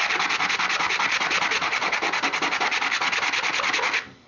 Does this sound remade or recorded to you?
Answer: recorded